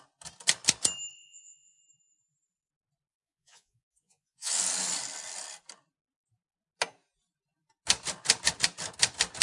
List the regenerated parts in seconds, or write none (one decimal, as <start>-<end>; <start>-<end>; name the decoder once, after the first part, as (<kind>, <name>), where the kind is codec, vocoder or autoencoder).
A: 1.1-1.8 (vocoder, Vocos); 3.1-4.5